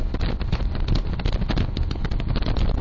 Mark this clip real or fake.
real